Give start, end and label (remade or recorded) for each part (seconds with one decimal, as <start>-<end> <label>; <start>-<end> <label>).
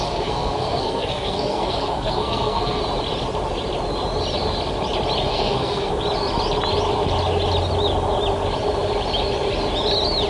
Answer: 0.0-2.8 remade; 2.8-5.3 recorded; 5.3-5.9 remade; 5.9-10.3 recorded